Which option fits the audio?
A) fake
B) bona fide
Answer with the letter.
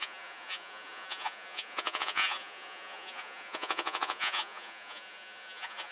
A